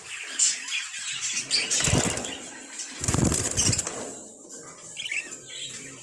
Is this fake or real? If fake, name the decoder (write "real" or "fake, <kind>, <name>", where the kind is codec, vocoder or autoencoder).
real